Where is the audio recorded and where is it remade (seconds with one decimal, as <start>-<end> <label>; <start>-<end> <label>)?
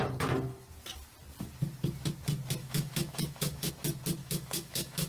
0.0-2.6 recorded; 2.6-3.7 remade; 3.7-4.2 recorded; 4.2-5.1 remade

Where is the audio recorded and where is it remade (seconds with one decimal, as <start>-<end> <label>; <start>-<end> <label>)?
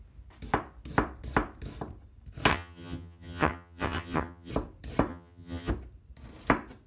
0.0-2.5 recorded; 2.5-4.5 remade; 4.5-5.1 recorded; 5.1-5.7 remade; 5.7-6.9 recorded